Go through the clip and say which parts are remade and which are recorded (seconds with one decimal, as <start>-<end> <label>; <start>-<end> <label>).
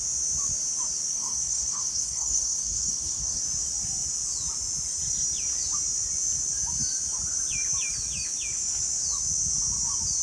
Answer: 0.0-1.1 recorded; 1.1-3.4 remade; 3.4-10.2 recorded